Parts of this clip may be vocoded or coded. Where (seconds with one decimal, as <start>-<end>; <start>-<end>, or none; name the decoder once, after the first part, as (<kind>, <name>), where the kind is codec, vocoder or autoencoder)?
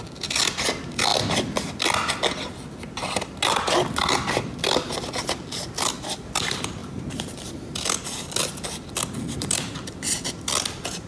6.8-7.5 (vocoder, BigVGAN v2)